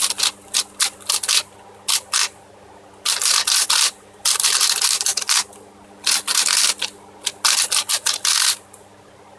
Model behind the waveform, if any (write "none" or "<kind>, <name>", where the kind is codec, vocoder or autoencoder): none